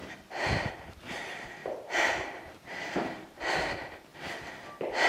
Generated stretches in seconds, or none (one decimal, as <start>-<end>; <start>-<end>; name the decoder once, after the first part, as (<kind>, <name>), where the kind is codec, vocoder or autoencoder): 0.0-0.7 (vocoder, BigVGAN v2); 1.6-3.4